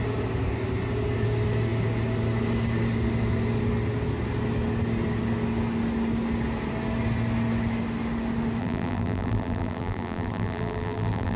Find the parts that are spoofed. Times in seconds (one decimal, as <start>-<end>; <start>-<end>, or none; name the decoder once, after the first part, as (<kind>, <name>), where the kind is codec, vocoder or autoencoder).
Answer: 8.6-11.4 (vocoder, BigVGAN v2)